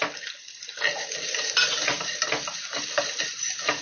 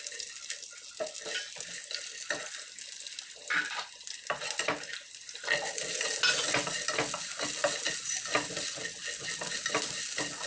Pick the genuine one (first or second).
second